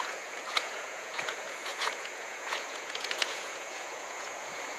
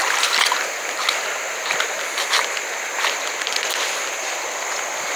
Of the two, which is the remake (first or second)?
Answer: first